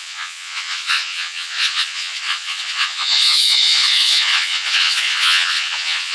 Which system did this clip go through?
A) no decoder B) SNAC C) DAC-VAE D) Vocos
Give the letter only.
D